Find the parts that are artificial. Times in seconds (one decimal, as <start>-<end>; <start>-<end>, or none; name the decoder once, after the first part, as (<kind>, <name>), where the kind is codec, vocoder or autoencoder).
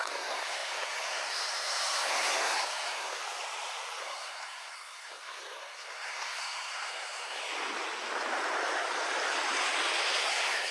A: 0.0-3.2 (codec, SNAC); 4.0-7.4; 10.2-10.7